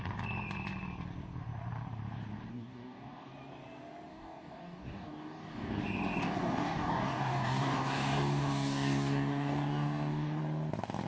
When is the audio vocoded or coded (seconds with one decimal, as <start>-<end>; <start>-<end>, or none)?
2.5-3.3; 4.1-5.8; 6.2-10.4